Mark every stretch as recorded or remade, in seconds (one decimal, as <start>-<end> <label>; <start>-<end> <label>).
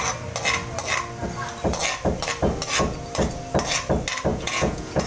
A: 0.0-4.3 recorded; 4.3-5.1 remade